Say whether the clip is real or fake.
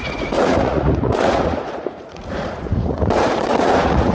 fake